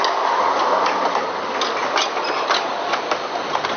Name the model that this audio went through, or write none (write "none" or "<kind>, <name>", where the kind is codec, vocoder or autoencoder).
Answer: none